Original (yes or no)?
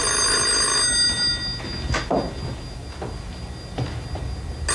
yes